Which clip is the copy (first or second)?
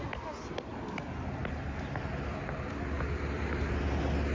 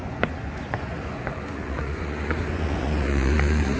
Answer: second